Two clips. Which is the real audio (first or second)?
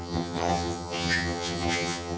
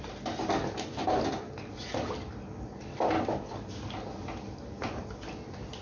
second